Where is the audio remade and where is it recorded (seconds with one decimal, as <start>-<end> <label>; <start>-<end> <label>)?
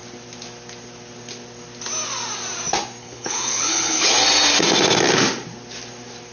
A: 0.0-3.0 recorded; 3.0-4.1 remade; 4.1-6.3 recorded